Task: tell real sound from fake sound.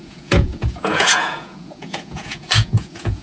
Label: fake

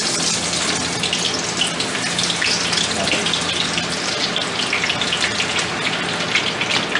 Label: real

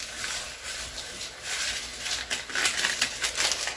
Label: real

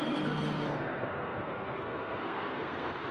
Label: fake